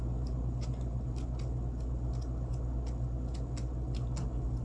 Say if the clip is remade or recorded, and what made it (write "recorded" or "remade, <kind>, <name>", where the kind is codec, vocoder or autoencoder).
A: recorded